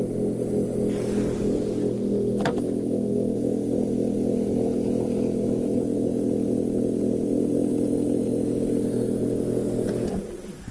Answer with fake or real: real